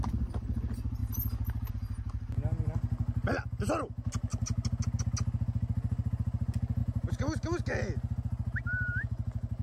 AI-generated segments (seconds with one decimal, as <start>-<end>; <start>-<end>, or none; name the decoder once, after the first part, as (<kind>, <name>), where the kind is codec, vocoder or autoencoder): none